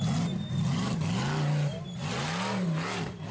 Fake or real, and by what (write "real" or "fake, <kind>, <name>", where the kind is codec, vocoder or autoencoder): real